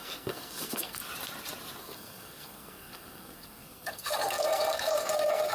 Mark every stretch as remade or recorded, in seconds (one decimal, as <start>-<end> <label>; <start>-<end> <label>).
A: 0.0-1.0 remade; 1.0-1.8 recorded; 1.8-5.5 remade